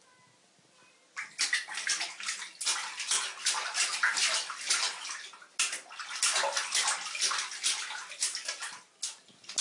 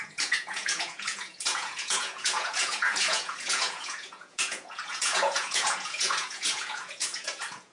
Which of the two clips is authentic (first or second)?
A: first